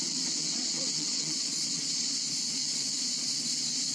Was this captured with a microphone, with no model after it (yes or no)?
no